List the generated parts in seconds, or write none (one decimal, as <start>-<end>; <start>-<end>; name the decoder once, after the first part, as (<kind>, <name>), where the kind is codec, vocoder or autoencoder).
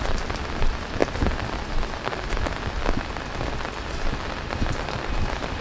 none